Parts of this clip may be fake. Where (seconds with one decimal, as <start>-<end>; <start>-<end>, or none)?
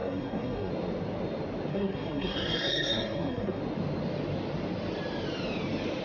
0.0-0.7; 1.7-3.6